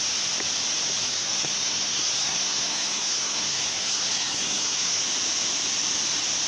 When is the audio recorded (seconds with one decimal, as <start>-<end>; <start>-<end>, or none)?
0.0-1.1; 5.0-6.5